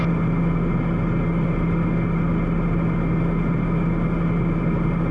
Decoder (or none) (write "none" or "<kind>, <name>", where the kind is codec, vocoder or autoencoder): none